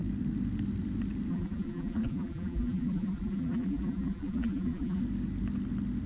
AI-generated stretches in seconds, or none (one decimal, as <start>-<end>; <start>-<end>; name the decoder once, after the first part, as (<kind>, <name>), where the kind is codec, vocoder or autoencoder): 1.3-5.0 (vocoder, BigVGAN v2)